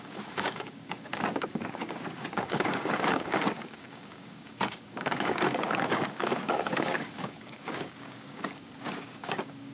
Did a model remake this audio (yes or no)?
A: yes